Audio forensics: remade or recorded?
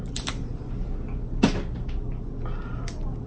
recorded